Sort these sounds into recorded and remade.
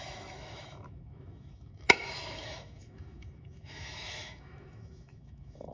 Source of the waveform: remade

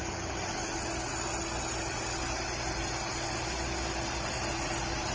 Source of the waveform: recorded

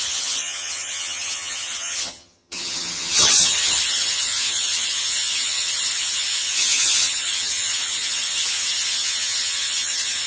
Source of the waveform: remade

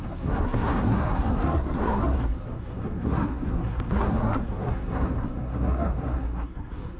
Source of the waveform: remade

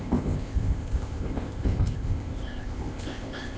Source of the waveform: remade